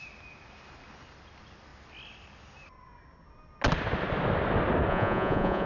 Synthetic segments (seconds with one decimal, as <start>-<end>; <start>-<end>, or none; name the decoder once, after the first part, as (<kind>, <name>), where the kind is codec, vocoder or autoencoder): 4.9-5.7 (vocoder, Vocos)

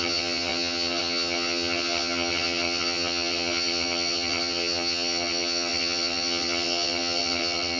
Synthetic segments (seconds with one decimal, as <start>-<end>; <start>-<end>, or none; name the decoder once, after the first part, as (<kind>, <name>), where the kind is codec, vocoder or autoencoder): 0.0-7.8 (vocoder, HiFi-GAN)

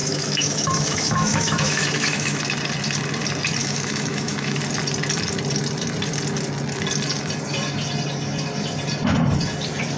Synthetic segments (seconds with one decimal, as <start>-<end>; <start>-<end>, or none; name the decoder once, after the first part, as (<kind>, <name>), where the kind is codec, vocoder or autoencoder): 0.0-2.4 (autoencoder, DAC-VAE); 3.6-4.6

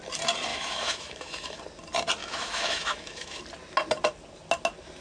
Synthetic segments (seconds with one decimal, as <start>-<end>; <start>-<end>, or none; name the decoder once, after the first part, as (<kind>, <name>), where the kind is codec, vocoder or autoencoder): 0.5-1.6 (autoencoder, DAC-VAE); 2.2-3.4

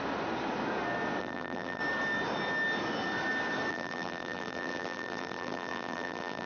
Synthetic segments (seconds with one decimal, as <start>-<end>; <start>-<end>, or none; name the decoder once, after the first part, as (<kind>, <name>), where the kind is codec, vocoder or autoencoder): 1.2-1.8 (vocoder, BigVGAN v2); 3.7-6.5